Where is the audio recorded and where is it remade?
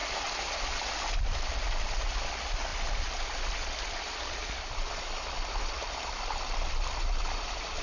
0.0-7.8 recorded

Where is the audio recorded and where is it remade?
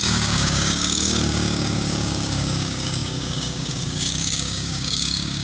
0.0-5.4 remade